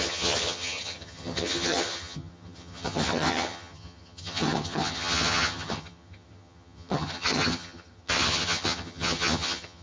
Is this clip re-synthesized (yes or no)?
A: yes